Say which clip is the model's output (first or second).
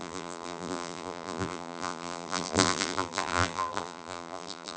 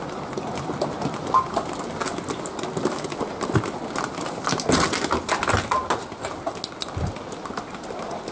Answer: first